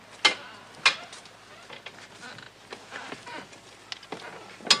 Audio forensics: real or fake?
real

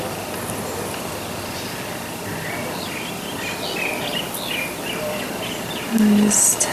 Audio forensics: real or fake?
real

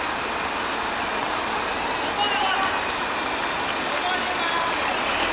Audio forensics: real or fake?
real